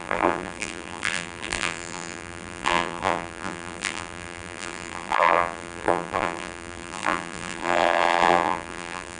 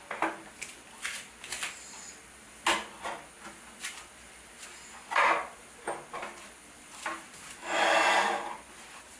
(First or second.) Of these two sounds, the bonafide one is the second